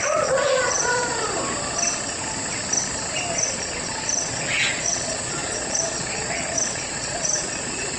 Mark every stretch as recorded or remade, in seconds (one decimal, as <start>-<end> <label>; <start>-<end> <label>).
0.0-1.1 remade; 1.1-3.3 recorded; 3.3-8.0 remade